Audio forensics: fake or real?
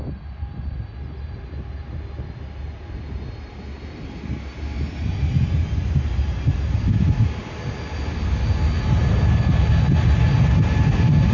real